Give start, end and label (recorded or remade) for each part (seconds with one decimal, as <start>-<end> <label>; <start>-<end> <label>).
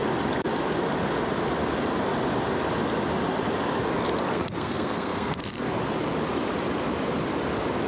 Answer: 0.0-4.3 recorded; 4.3-5.4 remade; 5.4-7.9 recorded